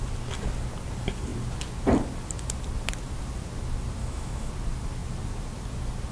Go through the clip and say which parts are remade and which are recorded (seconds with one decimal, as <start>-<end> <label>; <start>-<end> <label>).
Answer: 0.0-4.0 recorded; 4.0-4.5 remade; 4.5-6.1 recorded